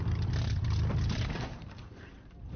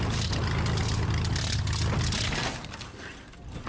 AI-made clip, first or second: first